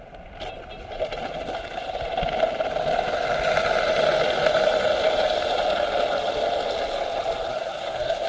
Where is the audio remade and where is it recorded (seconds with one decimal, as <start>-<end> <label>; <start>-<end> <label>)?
0.0-7.5 recorded; 7.5-8.3 remade